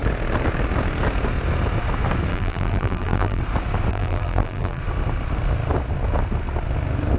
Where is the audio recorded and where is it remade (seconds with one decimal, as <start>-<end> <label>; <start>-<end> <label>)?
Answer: 0.0-2.3 recorded; 2.3-3.4 remade; 3.4-3.9 recorded; 3.9-4.8 remade; 4.8-7.2 recorded